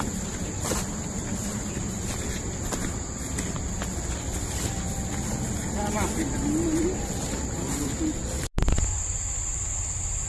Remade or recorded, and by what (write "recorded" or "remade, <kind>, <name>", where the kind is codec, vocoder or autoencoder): recorded